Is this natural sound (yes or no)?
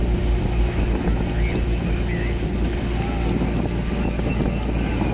yes